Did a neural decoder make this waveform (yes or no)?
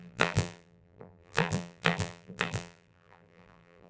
yes